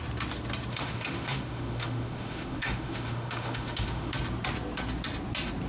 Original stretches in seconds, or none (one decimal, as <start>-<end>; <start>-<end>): 0.0-0.7; 4.1-5.7